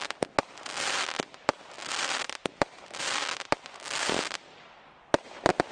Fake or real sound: real